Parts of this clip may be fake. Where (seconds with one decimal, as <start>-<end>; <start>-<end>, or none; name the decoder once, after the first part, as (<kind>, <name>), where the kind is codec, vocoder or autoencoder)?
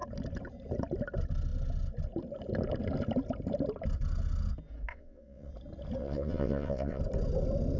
4.9-5.5 (vocoder, WaveNeXt); 6.0-7.0